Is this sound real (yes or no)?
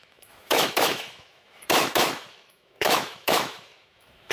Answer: no